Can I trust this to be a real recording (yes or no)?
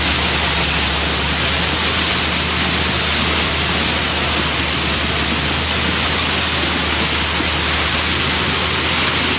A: yes